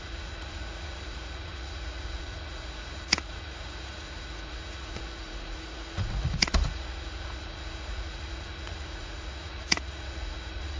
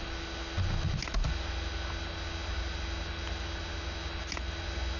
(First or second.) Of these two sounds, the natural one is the second